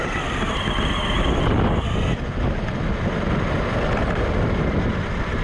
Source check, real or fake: real